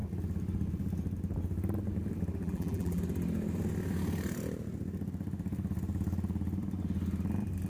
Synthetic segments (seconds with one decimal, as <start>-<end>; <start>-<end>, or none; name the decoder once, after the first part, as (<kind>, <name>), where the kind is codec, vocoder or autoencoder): 2.4-3.0 (vocoder, BigVGAN v2)